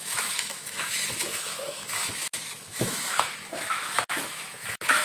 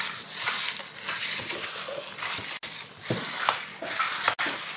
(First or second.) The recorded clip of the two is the second